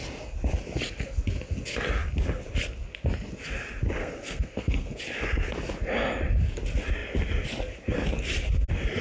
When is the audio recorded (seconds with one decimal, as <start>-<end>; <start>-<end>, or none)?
0.0-4.0; 5.0-9.0